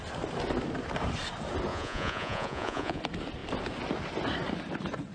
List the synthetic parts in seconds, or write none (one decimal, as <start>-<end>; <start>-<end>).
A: 1.7-3.0